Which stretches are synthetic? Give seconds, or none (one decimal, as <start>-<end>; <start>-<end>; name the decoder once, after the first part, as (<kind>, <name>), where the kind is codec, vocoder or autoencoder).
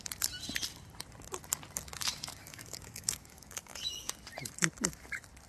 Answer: 2.4-4.1 (codec, DAC)